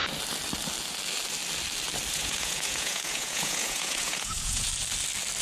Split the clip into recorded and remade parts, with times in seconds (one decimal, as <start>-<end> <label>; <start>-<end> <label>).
0.0-2.1 recorded; 2.1-4.7 remade; 4.7-5.4 recorded